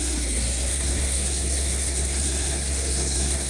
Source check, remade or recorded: remade